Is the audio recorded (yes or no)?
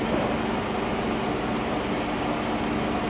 yes